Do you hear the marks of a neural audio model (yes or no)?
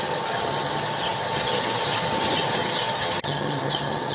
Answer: yes